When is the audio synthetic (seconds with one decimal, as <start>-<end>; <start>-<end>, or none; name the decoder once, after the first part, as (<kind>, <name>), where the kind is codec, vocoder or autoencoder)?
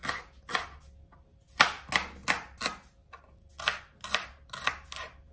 none